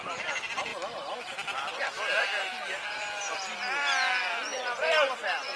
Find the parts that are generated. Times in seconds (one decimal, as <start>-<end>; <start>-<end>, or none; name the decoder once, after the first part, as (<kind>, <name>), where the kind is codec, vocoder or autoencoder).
none